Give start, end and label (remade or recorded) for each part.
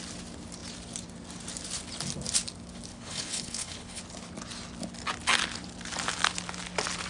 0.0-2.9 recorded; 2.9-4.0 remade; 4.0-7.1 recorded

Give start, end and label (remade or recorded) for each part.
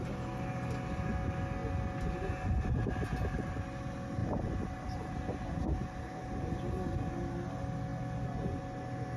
0.0-9.2 recorded